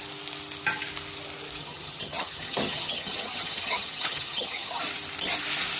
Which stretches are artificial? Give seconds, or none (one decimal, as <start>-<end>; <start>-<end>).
1.6-4.8